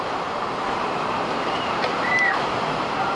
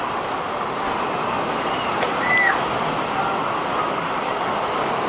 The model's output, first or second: first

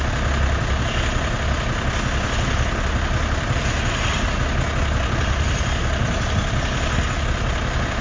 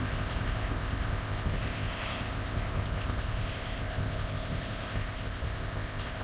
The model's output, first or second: second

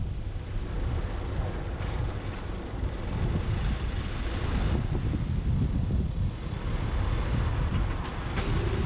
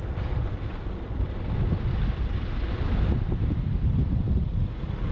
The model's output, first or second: second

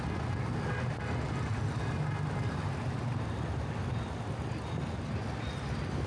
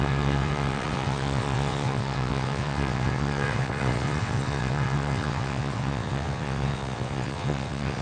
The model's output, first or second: second